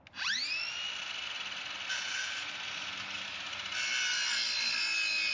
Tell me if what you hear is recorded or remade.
recorded